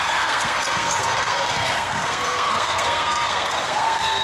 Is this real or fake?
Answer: fake